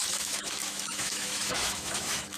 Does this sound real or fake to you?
fake